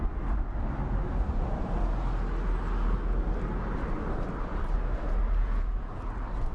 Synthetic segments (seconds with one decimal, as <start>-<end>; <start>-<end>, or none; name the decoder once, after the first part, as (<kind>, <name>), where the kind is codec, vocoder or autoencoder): 5.4-5.9 (vocoder, Vocos)